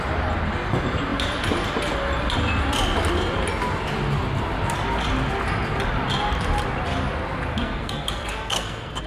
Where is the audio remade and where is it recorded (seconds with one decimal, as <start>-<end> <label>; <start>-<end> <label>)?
0.0-7.5 recorded; 7.5-9.1 remade